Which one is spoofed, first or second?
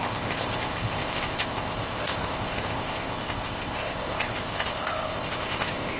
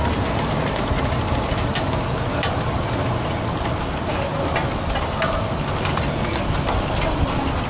first